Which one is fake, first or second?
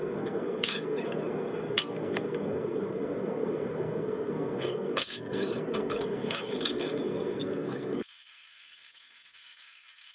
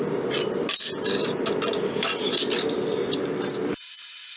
first